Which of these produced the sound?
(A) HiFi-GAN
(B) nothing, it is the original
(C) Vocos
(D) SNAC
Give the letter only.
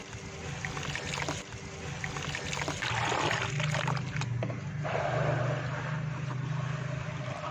B